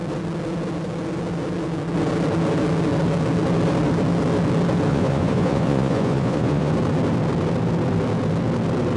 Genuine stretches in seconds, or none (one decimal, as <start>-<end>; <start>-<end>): 0.0-4.9; 6.7-9.0